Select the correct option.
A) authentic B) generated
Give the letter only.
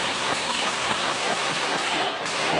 B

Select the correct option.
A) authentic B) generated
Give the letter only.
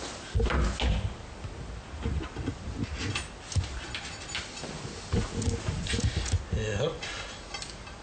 A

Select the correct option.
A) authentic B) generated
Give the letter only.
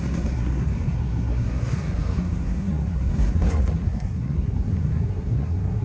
B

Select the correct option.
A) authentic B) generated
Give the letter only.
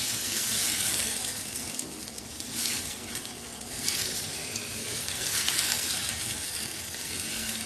B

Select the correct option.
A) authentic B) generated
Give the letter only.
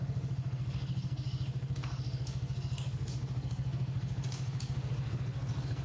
B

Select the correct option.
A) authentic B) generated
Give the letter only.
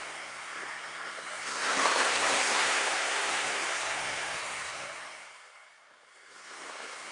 B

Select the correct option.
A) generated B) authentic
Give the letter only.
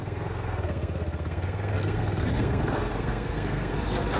A